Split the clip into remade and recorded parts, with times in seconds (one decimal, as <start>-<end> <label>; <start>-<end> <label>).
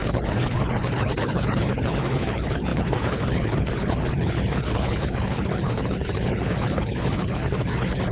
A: 0.0-8.1 remade